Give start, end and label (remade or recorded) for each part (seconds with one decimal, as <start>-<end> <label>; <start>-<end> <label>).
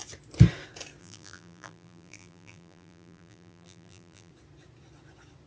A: 0.0-1.0 recorded; 1.0-4.3 remade; 4.3-5.5 recorded